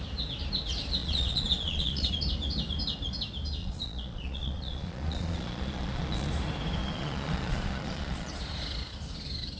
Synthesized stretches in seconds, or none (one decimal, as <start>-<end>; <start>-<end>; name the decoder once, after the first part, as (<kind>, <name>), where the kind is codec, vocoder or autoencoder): 1.0-2.1 (vocoder, Vocos); 3.6-6.3; 6.8-8.3